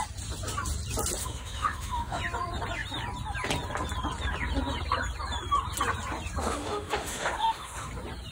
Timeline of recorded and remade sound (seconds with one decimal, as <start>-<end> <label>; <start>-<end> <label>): 0.0-1.2 recorded; 1.2-2.2 remade; 2.2-6.4 recorded; 6.4-7.9 remade; 7.9-8.3 recorded